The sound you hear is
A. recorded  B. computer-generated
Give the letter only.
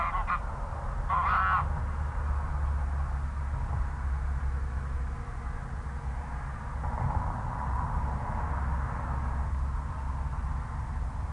A